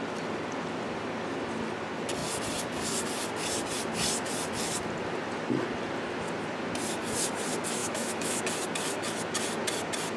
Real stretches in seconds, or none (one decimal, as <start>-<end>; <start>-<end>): 0.0-7.8; 8.4-10.2